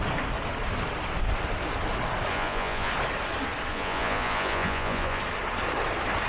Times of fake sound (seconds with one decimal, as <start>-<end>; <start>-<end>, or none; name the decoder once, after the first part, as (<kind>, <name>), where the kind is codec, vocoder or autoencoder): 2.3-2.9 (vocoder, Vocos); 3.7-5.2

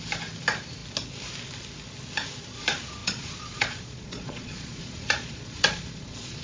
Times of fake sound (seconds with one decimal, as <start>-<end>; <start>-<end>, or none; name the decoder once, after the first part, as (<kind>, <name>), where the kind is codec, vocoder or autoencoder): 3.0-6.4 (vocoder, Vocos)

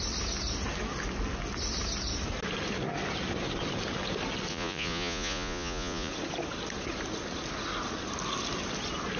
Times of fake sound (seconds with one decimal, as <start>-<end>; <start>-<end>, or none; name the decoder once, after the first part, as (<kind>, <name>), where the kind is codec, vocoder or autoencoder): 4.5-6.1 (vocoder, Vocos)

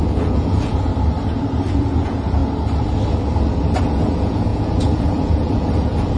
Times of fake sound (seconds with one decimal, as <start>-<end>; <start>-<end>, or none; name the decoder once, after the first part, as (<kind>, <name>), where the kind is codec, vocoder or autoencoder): 0.0-0.9 (vocoder, Vocos); 1.7-2.4; 3.8-6.2

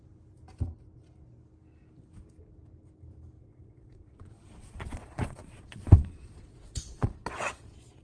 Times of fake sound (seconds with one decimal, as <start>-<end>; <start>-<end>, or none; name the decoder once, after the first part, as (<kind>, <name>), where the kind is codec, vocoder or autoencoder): 3.4-8.0 (vocoder, Vocos)

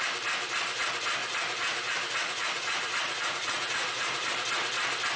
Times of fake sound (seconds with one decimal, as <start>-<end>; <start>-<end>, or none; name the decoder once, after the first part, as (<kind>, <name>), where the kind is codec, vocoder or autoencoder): 1.2-4.3 (vocoder, Vocos)

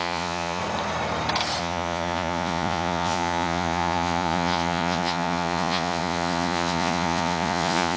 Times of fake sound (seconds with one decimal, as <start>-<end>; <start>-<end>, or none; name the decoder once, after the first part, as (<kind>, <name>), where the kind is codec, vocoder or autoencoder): 0.0-0.6 (vocoder, Vocos); 1.6-8.0

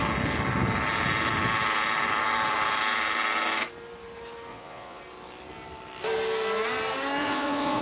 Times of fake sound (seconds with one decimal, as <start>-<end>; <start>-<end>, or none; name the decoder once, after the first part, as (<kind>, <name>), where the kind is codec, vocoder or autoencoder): 4.5-5.0 (vocoder, Vocos); 7.2-7.8